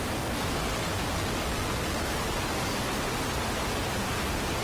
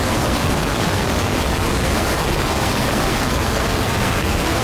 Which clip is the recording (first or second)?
first